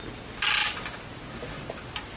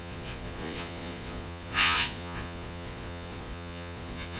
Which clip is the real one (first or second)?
first